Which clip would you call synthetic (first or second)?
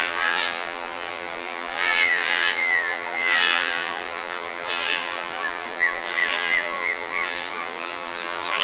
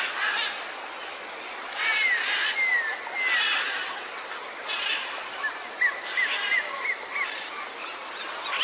first